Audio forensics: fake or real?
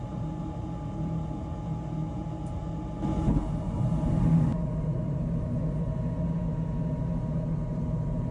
fake